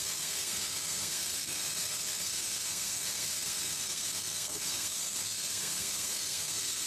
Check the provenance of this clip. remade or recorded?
remade